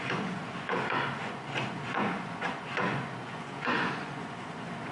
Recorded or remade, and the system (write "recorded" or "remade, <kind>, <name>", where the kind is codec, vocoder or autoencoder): remade, vocoder, Vocos